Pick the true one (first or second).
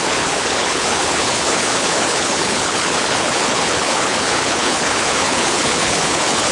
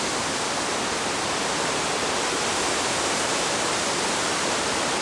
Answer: second